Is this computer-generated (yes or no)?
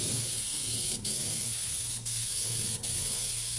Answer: yes